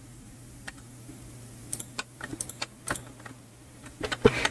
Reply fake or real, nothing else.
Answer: fake